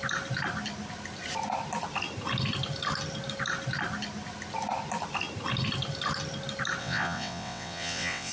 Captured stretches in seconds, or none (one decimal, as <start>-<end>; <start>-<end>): 0.0-6.8